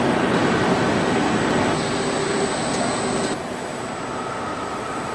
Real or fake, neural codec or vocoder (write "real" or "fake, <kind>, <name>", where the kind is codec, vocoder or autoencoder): real